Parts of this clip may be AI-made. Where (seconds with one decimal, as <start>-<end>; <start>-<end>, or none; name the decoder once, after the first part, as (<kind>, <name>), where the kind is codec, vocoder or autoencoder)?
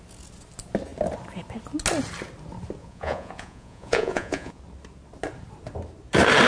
2.8-4.6 (vocoder, Vocos)